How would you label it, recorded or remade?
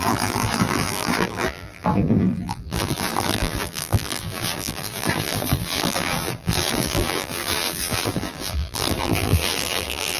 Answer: remade